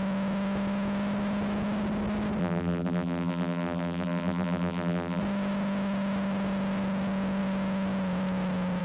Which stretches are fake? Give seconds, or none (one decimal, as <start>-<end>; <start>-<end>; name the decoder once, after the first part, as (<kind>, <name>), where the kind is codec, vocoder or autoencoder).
2.4-5.2 (vocoder, BigVGAN v2)